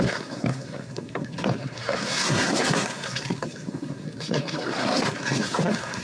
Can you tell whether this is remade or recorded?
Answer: remade